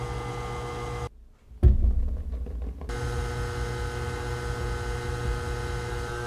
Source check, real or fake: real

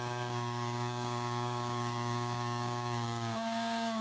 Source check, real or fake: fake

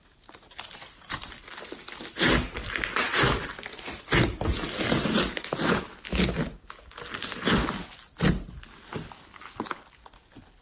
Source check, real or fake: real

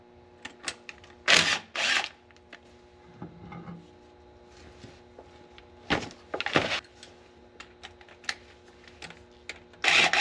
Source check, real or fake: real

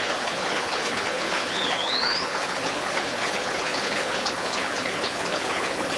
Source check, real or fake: fake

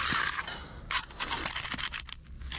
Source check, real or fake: real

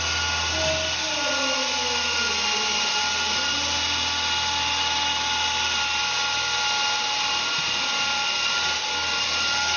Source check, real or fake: real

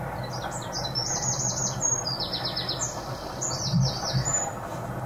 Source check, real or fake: real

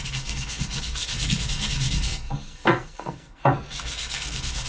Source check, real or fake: fake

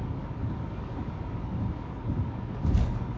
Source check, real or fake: fake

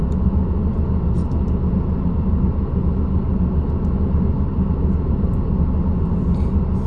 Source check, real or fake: real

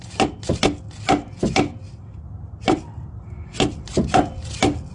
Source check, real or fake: real